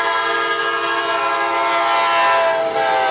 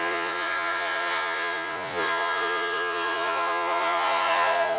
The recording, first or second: first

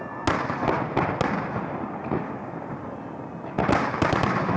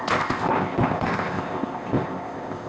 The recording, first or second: first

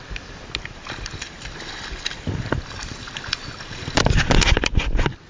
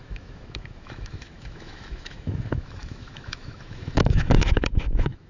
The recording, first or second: first